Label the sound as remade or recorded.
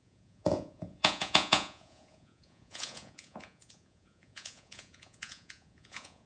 remade